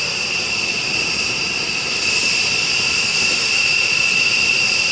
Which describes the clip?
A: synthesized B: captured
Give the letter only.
A